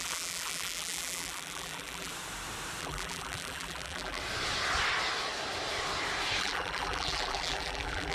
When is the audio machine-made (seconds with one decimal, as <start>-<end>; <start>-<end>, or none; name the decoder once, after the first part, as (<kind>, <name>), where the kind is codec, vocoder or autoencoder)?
0.0-2.1 (vocoder, BigVGAN v2); 2.8-4.2; 6.4-8.1